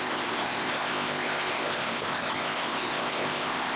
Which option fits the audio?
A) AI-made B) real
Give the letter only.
A